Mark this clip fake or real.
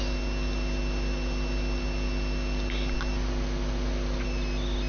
real